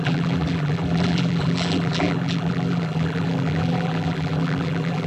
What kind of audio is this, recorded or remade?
remade